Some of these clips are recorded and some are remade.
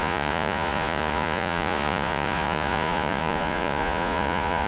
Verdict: remade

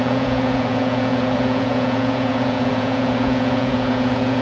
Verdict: remade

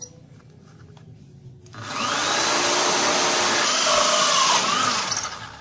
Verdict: recorded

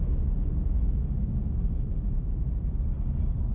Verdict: recorded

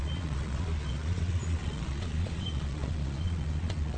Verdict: remade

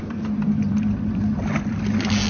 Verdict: recorded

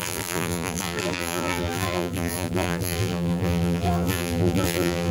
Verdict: remade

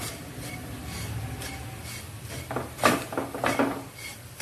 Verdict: recorded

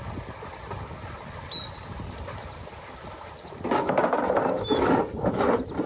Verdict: recorded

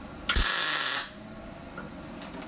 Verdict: recorded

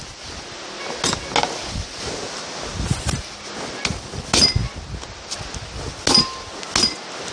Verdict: recorded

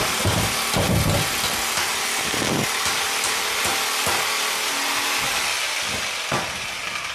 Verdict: recorded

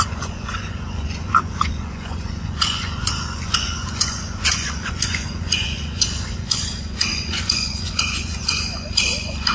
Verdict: remade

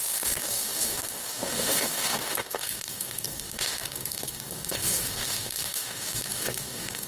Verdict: remade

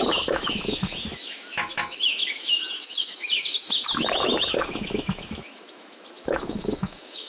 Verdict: remade